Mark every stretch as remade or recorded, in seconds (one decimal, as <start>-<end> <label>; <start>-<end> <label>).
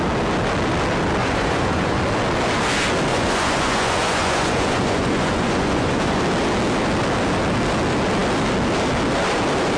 0.0-1.2 recorded; 1.2-2.0 remade; 2.0-3.1 recorded; 3.1-6.2 remade; 6.2-9.8 recorded